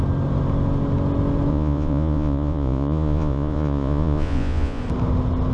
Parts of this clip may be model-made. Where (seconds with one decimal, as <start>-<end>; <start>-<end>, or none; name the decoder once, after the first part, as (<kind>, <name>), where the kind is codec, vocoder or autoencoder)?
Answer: 1.5-4.8 (vocoder, Vocos)